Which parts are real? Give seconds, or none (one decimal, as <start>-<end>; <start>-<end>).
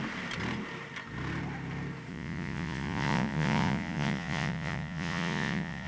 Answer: 0.0-2.1